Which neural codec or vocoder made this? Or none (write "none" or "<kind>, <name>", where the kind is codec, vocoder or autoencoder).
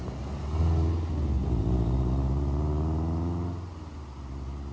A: none